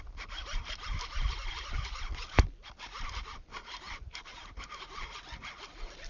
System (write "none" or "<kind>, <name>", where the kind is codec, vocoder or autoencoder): none